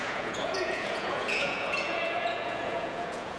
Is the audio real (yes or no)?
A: no